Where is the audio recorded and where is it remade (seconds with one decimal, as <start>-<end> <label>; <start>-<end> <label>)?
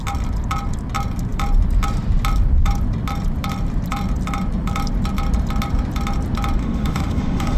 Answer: 0.0-6.6 recorded; 6.6-7.6 remade